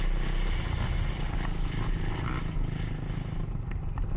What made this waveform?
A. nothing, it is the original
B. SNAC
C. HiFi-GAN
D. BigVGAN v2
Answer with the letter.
A